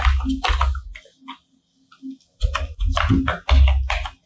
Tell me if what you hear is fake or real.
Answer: real